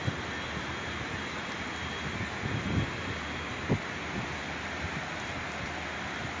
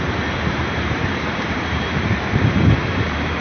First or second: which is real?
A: first